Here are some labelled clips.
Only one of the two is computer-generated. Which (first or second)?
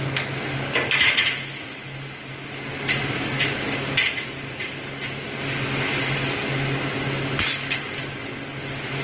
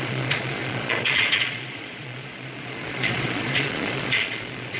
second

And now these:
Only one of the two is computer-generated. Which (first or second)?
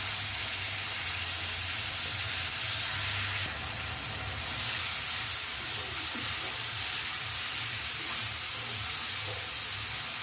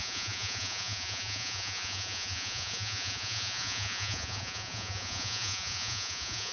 second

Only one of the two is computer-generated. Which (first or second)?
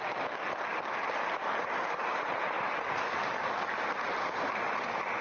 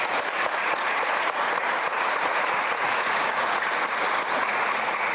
second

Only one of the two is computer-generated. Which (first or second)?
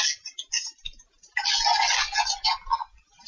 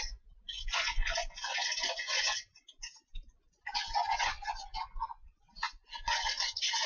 second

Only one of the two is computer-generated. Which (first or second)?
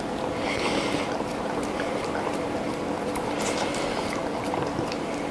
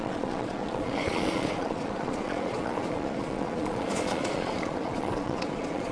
second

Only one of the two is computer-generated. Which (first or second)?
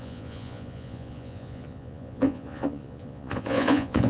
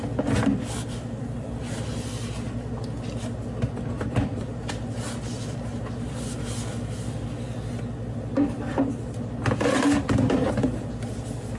first